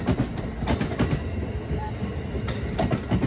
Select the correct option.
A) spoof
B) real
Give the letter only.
B